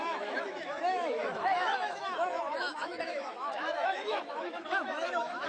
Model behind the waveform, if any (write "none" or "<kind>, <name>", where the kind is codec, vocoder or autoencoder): autoencoder, DAC-VAE